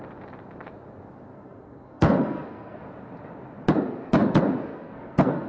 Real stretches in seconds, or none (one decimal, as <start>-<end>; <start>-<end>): 0.0-1.3; 2.8-4.7